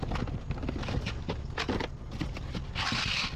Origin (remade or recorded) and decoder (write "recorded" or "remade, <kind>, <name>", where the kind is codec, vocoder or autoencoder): recorded